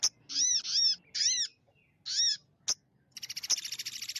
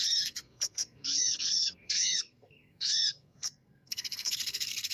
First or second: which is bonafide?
first